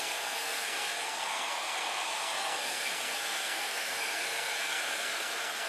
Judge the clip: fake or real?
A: fake